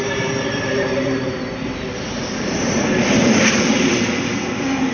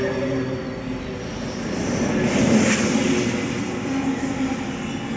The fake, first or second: first